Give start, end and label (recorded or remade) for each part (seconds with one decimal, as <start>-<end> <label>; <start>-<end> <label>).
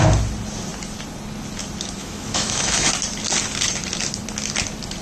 0.0-2.0 recorded; 2.0-2.9 remade; 2.9-5.0 recorded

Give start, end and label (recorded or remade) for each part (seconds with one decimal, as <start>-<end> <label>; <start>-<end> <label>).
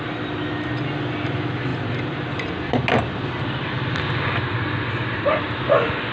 0.0-6.1 recorded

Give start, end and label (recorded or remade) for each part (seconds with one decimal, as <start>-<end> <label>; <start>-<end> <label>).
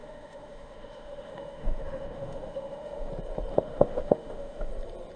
0.0-3.1 remade; 3.1-3.5 recorded; 3.5-4.7 remade; 4.7-5.2 recorded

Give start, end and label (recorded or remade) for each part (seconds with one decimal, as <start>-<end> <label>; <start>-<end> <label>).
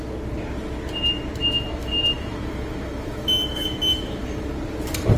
0.0-1.4 recorded; 1.4-4.5 remade; 4.5-5.2 recorded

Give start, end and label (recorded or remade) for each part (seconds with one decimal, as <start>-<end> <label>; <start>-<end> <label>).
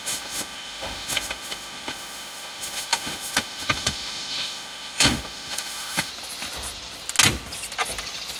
0.0-6.1 remade; 6.1-8.4 recorded